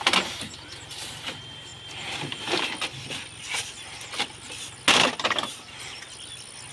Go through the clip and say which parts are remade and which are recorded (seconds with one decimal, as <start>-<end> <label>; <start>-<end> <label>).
0.0-6.7 recorded